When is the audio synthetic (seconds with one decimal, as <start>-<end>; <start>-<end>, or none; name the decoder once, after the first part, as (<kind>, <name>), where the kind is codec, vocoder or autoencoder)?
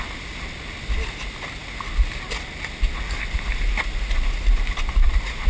none